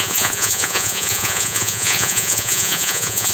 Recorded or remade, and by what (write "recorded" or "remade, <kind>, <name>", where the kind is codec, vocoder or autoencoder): remade, vocoder, Vocos